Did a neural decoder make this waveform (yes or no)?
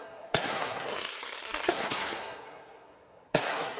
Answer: yes